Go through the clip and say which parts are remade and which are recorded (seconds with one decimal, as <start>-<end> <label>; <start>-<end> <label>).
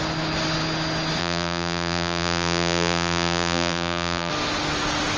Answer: 0.0-1.2 recorded; 1.2-4.3 remade; 4.3-5.2 recorded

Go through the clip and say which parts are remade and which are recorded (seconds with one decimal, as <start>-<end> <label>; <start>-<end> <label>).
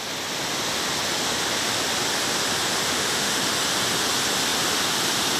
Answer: 0.0-2.9 recorded; 2.9-3.4 remade; 3.4-5.4 recorded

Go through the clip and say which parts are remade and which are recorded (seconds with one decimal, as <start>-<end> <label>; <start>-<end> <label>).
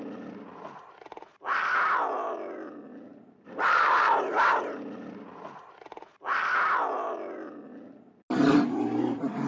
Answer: 0.0-3.1 recorded; 3.1-4.6 remade; 4.6-9.5 recorded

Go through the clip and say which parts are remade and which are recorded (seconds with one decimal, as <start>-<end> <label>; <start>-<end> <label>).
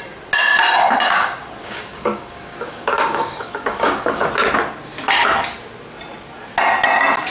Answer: 0.0-1.6 recorded; 1.6-4.3 remade; 4.3-7.3 recorded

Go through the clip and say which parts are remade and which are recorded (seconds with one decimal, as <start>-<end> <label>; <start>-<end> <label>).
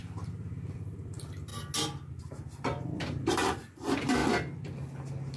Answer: 0.0-1.5 remade; 1.5-2.1 recorded; 2.1-4.2 remade; 4.2-5.4 recorded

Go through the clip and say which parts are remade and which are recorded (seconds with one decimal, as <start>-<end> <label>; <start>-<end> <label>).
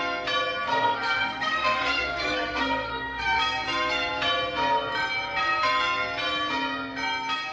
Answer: 0.0-0.7 recorded; 0.7-3.4 remade; 3.4-7.5 recorded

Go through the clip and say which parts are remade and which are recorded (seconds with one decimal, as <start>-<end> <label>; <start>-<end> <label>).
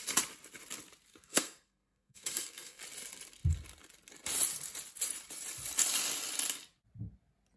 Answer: 0.0-1.1 recorded; 1.1-2.8 remade; 2.8-7.6 recorded